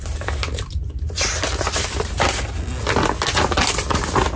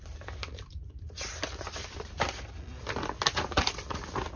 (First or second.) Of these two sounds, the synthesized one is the second